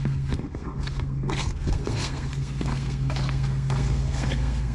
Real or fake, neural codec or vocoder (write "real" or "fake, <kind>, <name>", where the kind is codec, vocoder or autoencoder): fake, codec, SNAC